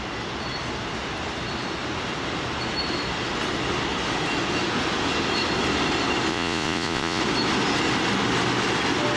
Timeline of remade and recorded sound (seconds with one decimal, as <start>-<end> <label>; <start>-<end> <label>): 0.0-6.3 recorded; 6.3-7.2 remade; 7.2-9.2 recorded